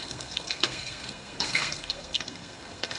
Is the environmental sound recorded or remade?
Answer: remade